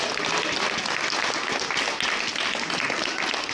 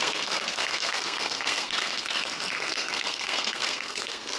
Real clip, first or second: first